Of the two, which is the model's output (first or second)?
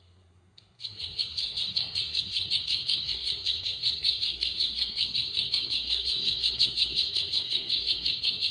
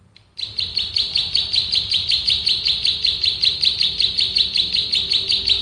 first